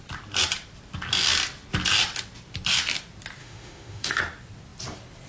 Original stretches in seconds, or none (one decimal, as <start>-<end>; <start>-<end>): 0.0-3.4; 4.2-5.3